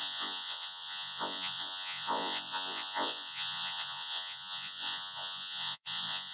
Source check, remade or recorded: remade